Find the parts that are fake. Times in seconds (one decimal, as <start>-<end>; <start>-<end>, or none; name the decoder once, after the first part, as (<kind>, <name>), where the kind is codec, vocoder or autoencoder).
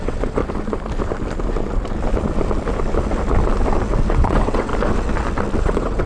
0.0-0.4 (vocoder, WaveNeXt); 4.1-4.7; 5.6-6.1